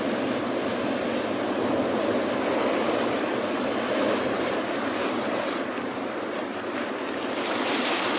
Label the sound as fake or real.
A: real